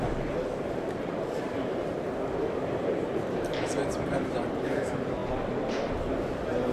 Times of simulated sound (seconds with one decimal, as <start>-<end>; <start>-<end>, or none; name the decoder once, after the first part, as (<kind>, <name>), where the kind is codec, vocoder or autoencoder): 0.0-5.2 (vocoder, BigVGAN v2); 5.9-6.7